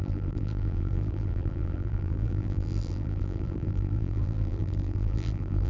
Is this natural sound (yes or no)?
no